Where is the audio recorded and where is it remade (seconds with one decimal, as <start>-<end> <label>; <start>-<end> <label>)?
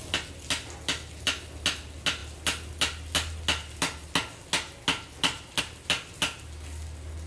0.0-7.3 recorded